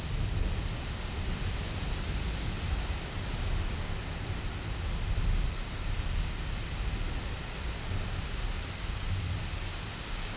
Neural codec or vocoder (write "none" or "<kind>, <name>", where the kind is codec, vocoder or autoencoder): none